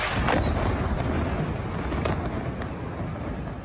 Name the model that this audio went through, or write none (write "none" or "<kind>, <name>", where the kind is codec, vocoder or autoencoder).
none